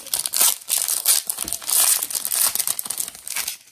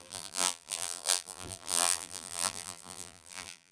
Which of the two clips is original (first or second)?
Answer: first